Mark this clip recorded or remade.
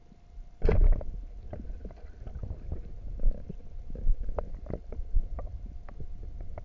recorded